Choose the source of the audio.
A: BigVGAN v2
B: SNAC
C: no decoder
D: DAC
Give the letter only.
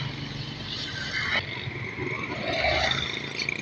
C